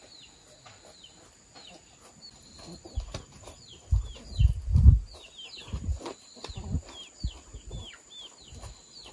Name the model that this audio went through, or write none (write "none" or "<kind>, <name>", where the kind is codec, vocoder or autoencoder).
none